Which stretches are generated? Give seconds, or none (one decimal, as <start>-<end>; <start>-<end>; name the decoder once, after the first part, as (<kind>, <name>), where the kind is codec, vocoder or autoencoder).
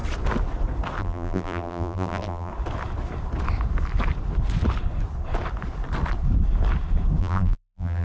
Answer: 1.0-2.5 (vocoder, BigVGAN v2); 7.2-8.0